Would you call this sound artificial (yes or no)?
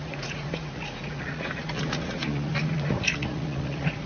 yes